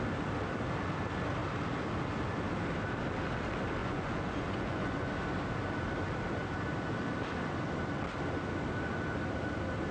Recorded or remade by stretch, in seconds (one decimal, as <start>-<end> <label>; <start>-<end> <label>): 0.0-3.8 recorded; 3.8-5.1 remade; 5.1-9.9 recorded